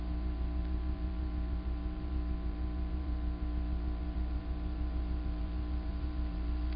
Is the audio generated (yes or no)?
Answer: yes